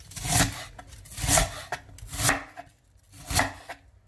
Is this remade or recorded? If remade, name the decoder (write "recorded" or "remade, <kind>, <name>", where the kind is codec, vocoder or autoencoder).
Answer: recorded